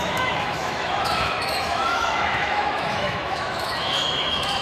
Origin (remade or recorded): remade